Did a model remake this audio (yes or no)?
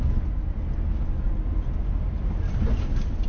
no